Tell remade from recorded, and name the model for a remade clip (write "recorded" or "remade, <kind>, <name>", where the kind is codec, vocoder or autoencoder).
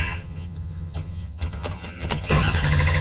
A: remade, vocoder, HiFi-GAN